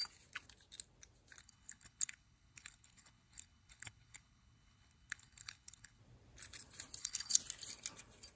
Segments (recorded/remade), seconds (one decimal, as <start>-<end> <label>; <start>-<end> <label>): 0.0-1.4 recorded; 1.4-6.0 remade; 6.0-7.0 recorded; 7.0-7.4 remade; 7.4-8.4 recorded

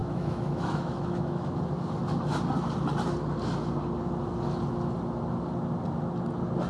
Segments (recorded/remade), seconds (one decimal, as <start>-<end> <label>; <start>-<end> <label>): 0.0-1.6 remade; 1.6-6.7 recorded